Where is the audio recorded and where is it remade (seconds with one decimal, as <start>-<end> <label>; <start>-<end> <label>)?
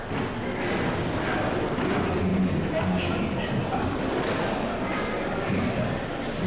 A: 0.0-6.5 recorded